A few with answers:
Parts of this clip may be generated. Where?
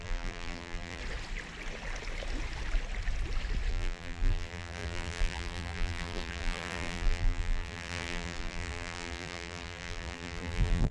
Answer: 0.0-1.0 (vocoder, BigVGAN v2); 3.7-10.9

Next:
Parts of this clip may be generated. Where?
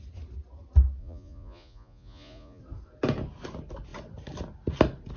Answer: 1.0-2.6 (vocoder, Vocos)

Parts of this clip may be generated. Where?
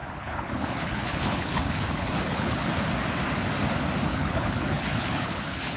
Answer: 0.0-2.7 (codec, HILCodec); 4.1-5.8